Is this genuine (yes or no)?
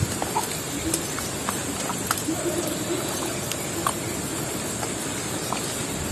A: yes